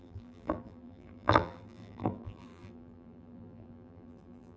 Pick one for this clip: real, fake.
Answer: fake